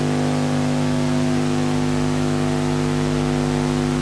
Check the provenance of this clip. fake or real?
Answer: real